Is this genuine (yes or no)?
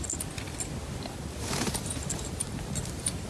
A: no